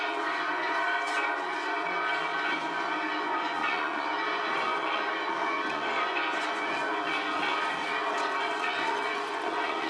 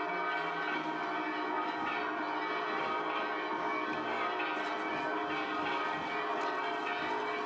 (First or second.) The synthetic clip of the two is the first